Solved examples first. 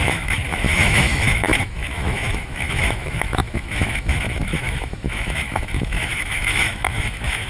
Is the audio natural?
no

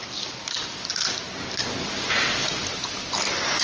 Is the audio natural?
yes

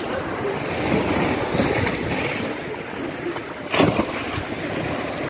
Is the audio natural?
yes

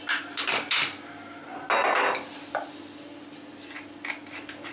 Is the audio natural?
yes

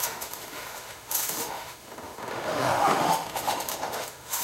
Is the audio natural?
no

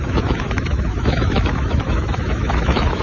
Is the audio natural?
no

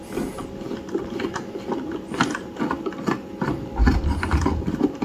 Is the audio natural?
yes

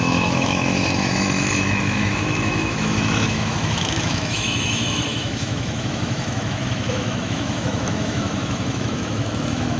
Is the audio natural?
no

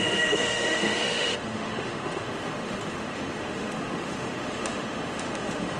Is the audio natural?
no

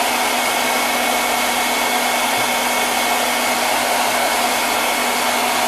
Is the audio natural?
yes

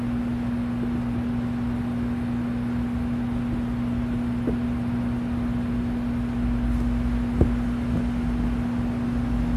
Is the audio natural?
yes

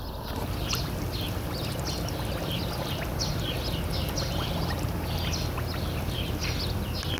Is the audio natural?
yes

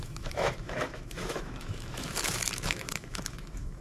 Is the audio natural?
no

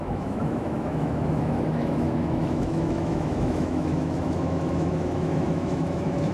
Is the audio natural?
no